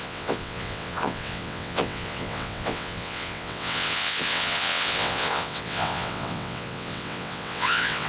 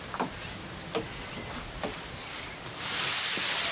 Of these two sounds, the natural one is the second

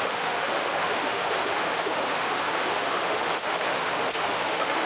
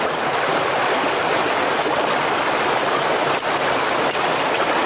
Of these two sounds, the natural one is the second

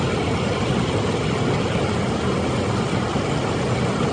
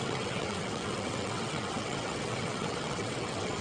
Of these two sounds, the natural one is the first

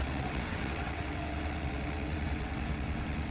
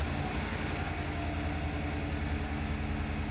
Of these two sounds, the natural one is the second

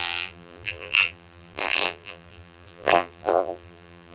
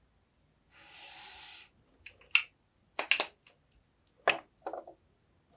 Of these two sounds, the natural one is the second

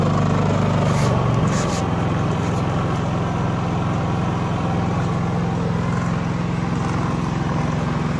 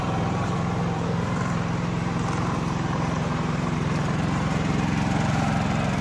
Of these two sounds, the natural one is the first